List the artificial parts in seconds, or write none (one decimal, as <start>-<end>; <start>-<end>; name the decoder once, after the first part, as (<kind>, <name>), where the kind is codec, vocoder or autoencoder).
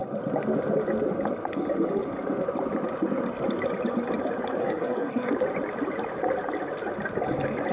4.6-5.3 (codec, SNAC)